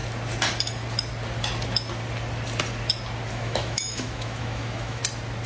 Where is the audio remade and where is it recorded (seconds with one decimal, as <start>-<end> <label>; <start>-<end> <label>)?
0.0-3.3 recorded; 3.3-5.0 remade; 5.0-5.5 recorded